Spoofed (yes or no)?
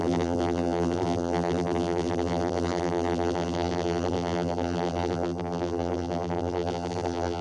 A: yes